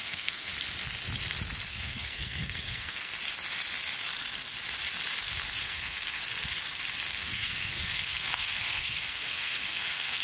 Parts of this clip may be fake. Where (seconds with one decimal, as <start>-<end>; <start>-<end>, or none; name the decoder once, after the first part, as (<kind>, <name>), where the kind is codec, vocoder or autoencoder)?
0.0-0.5 (codec, SNAC); 1.7-3.1; 5.6-6.2; 7.1-10.2